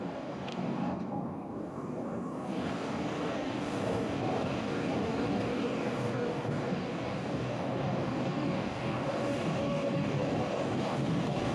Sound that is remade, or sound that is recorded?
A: remade